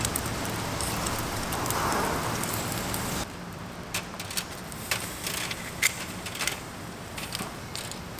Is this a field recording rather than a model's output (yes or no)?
yes